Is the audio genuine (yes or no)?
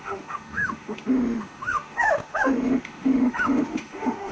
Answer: no